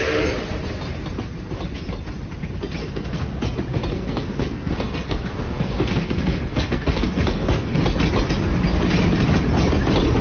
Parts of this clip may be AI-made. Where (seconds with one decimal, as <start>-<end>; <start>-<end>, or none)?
2.8-3.3; 3.9-7.8